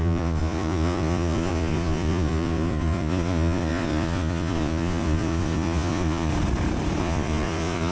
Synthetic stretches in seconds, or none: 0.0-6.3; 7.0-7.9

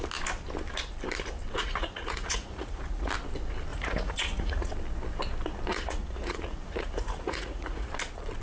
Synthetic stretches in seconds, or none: 1.6-3.1; 3.7-4.7; 5.7-7.9

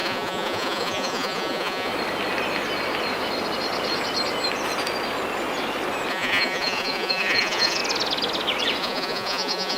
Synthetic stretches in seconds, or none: 0.0-1.9; 6.1-7.8; 8.8-9.8

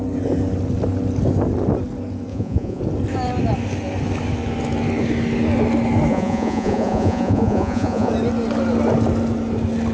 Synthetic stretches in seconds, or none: 2.3-2.8; 6.1-8.1

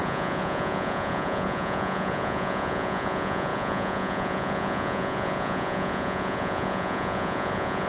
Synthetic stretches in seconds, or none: 0.0-7.9

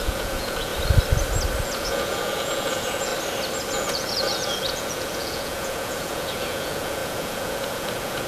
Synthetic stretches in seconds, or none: 0.0-0.7; 1.6-3.1; 3.7-8.3